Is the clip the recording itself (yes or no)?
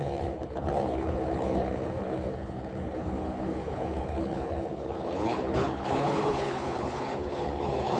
no